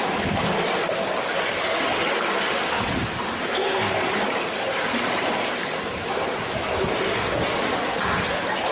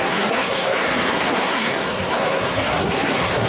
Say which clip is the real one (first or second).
first